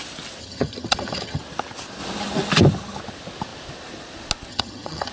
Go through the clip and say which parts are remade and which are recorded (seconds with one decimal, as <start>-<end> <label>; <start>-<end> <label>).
0.0-0.4 recorded; 0.4-1.4 remade; 1.4-4.5 recorded; 4.5-5.1 remade